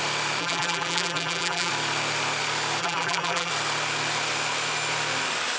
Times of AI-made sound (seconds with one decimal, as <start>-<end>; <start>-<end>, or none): 0.4-1.7; 2.8-3.5